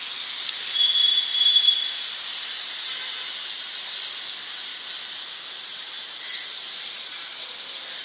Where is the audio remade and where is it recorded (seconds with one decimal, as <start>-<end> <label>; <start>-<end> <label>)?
0.0-4.7 remade; 4.7-5.2 recorded; 5.2-7.3 remade; 7.3-8.0 recorded